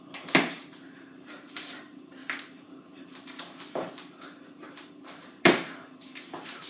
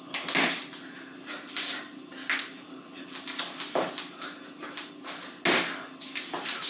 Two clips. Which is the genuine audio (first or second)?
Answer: second